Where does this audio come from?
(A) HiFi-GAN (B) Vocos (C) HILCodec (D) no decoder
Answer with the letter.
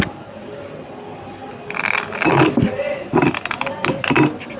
D